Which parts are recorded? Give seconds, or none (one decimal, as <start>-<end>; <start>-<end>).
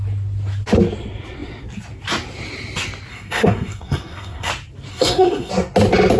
0.0-3.1; 4.5-4.9; 5.5-6.2